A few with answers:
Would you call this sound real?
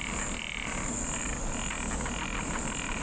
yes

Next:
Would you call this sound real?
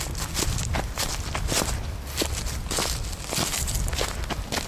yes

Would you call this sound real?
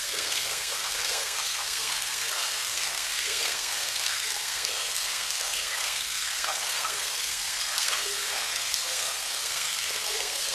no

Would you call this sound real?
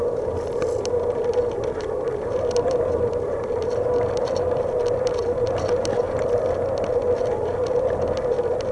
yes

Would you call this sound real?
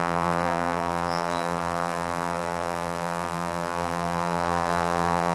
no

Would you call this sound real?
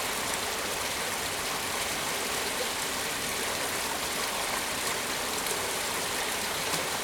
yes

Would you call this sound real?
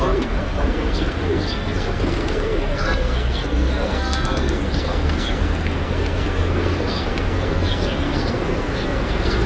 no